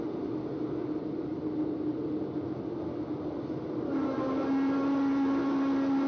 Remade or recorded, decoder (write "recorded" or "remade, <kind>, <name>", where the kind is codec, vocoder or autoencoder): recorded